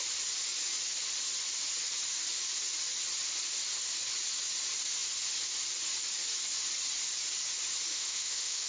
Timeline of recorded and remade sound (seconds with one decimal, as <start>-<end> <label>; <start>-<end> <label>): 0.0-7.9 recorded; 7.9-8.7 remade